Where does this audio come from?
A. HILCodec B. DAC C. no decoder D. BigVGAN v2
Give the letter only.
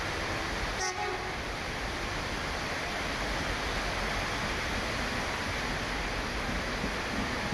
C